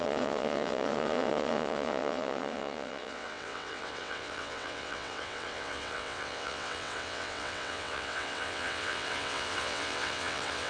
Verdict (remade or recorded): remade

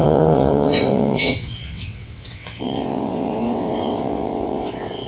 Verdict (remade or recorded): remade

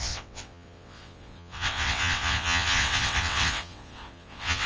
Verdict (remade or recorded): remade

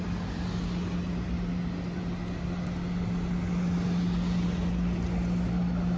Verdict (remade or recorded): recorded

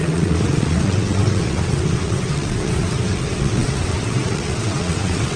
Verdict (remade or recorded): remade